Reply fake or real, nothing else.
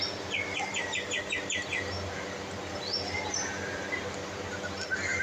real